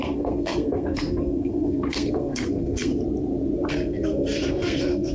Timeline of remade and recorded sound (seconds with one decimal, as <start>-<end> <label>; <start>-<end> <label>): 0.0-3.0 remade; 3.0-3.7 recorded; 3.7-5.1 remade